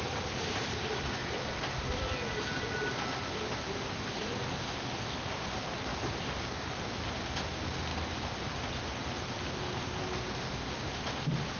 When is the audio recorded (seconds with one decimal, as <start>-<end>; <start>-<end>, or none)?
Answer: 0.0-11.6